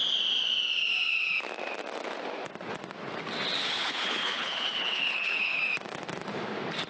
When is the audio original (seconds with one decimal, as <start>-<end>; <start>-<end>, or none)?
0.0-3.6; 5.6-6.9